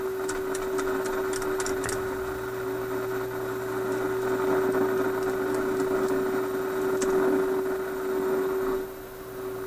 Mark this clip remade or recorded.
recorded